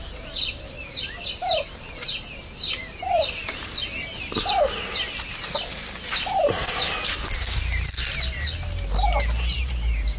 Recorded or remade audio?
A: recorded